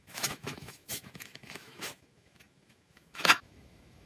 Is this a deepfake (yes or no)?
yes